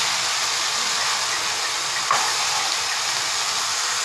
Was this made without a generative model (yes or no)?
yes